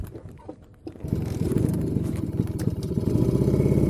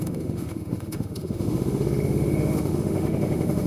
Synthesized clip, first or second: second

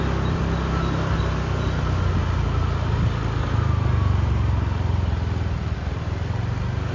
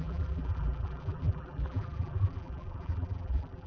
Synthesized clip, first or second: second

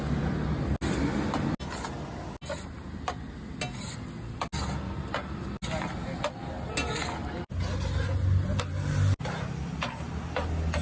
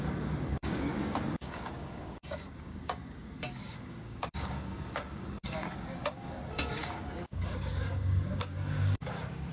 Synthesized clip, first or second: second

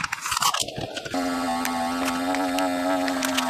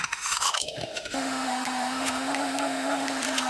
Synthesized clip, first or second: second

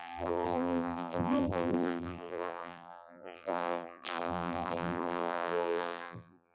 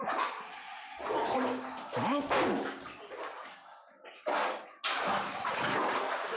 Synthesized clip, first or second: first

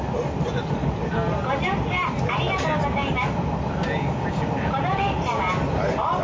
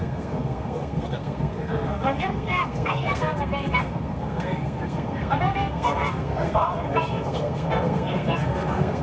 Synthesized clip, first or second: second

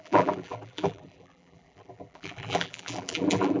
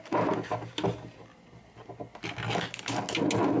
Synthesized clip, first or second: first